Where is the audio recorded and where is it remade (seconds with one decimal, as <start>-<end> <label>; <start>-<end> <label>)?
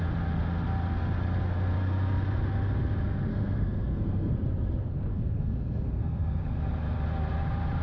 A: 0.0-3.3 recorded; 3.3-4.3 remade; 4.3-5.1 recorded; 5.1-6.4 remade; 6.4-7.8 recorded